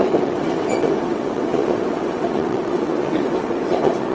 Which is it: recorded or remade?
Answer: remade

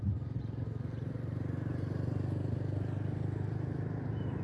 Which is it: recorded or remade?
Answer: recorded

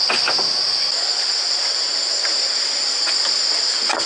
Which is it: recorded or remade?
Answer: recorded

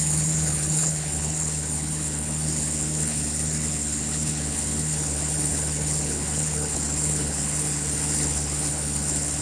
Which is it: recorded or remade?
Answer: remade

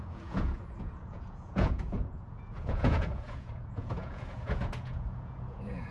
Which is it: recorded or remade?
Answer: remade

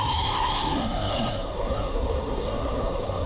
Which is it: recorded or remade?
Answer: remade